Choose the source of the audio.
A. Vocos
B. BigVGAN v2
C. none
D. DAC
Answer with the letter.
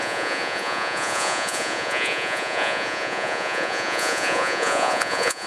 A